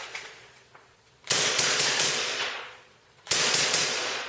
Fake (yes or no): yes